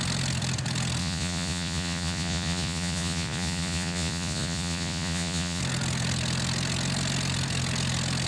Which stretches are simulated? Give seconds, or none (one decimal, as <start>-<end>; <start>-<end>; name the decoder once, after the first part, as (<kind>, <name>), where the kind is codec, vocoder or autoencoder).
1.0-5.6 (vocoder, Vocos)